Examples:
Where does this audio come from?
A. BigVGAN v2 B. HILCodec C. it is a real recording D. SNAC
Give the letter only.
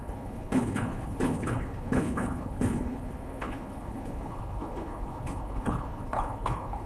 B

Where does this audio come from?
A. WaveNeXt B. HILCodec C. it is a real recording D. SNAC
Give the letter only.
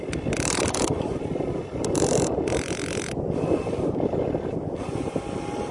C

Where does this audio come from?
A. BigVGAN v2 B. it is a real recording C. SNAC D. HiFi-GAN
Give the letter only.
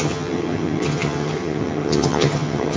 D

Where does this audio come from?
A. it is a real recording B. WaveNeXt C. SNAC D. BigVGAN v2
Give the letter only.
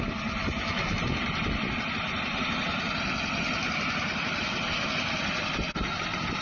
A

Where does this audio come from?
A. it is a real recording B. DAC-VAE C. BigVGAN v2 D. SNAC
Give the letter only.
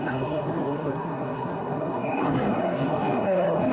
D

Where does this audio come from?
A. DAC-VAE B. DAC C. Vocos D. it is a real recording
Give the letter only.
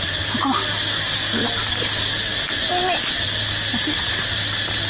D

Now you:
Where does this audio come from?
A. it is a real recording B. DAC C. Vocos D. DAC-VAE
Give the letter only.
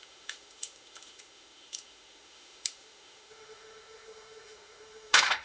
D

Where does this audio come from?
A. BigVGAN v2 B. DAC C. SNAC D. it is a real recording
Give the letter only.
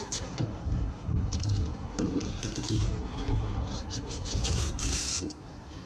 C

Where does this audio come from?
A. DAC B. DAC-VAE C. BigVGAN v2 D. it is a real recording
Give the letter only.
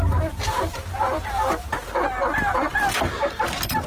D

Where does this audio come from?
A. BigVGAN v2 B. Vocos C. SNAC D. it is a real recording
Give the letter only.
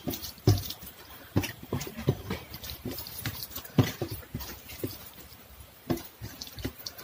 A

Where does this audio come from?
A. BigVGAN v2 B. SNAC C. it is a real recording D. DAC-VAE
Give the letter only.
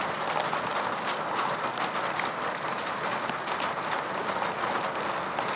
C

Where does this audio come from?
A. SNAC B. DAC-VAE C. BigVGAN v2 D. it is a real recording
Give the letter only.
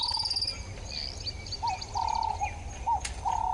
D